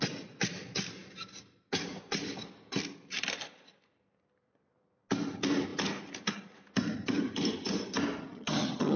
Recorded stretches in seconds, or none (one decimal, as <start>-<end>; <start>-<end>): 0.0-8.3